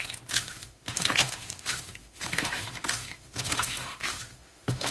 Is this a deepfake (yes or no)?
yes